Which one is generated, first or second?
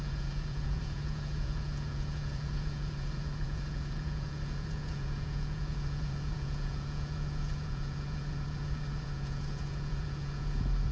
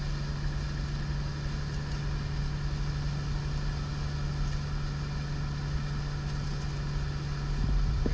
first